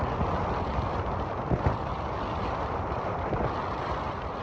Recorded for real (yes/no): no